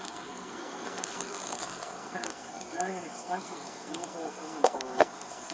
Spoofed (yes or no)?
yes